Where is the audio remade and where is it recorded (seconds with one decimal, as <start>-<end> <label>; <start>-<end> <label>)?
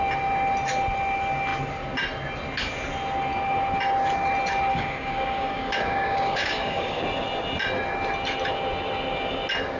0.0-4.7 recorded; 4.7-7.0 remade; 7.0-9.8 recorded